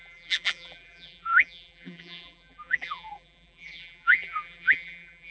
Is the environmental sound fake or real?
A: fake